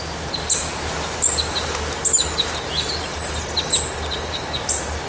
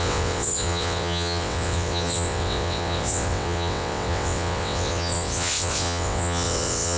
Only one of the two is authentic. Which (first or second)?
first